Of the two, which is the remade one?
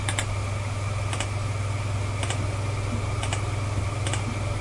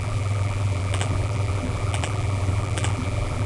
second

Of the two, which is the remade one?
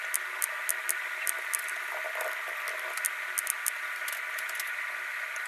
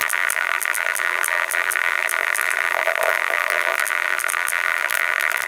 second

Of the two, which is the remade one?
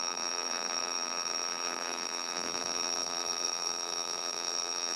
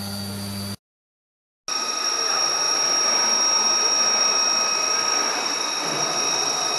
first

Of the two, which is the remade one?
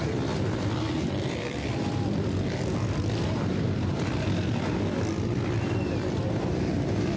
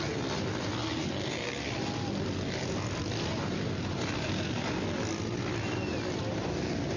first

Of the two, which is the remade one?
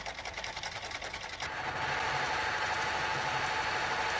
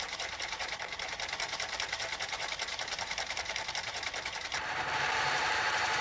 second